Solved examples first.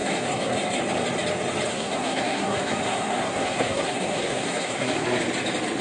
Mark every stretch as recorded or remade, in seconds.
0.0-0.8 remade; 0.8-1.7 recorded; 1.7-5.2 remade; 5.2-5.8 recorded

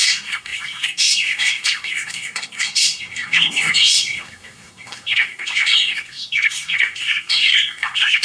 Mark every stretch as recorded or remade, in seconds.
0.0-8.2 remade